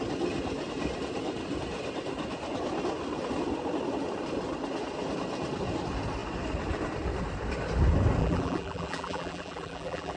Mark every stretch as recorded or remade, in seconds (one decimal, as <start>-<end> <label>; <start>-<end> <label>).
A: 0.0-8.2 recorded; 8.2-10.2 remade